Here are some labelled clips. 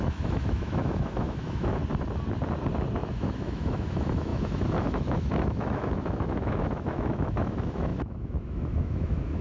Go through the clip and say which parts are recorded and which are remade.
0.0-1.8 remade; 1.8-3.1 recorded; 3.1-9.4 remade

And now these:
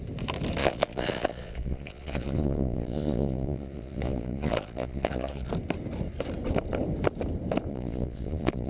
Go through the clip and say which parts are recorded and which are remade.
0.0-0.6 recorded; 0.6-5.5 remade; 5.5-7.7 recorded; 7.7-8.7 remade

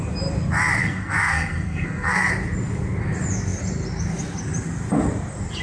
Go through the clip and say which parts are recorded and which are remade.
0.0-0.8 recorded; 0.8-2.3 remade; 2.3-5.6 recorded